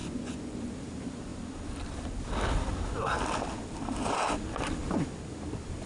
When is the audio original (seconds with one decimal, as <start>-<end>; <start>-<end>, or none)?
0.7-5.9